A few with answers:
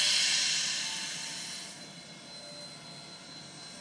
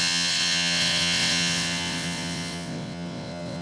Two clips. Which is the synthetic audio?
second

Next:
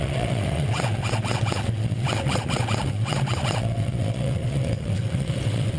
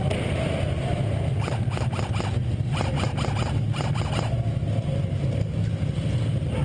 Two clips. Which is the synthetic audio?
first